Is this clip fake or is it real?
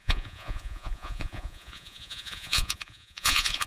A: fake